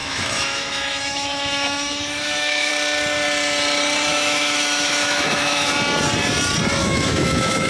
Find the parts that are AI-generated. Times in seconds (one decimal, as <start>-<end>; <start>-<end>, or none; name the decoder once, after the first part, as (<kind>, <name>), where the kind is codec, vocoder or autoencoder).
0.0-2.7 (autoencoder, DAC-VAE); 4.1-5.7; 6.8-7.7